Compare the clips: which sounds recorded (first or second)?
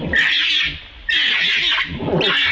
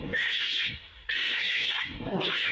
first